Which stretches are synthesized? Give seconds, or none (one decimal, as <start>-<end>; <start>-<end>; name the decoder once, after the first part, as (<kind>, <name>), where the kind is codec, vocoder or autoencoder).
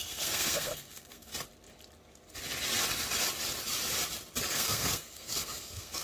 0.0-1.3 (codec, SNAC); 4.5-6.0